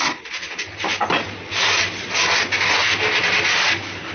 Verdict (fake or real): real